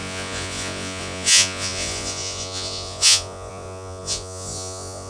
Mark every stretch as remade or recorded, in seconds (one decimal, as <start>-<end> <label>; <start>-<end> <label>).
0.0-5.1 remade